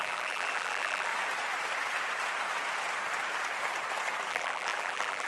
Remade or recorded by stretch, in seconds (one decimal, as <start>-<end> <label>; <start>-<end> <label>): 0.0-1.1 remade; 1.1-4.3 recorded; 4.3-5.3 remade